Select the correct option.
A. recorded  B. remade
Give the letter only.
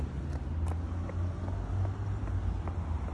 A